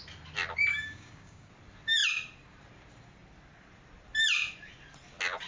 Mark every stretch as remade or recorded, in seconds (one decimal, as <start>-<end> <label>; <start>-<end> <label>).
0.0-0.7 recorded; 0.7-1.5 remade; 1.5-5.5 recorded